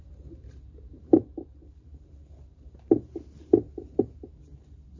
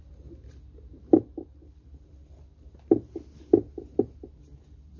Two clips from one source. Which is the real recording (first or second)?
second